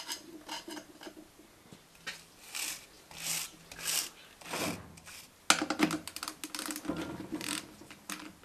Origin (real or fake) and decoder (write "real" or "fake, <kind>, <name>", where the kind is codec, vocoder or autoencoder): real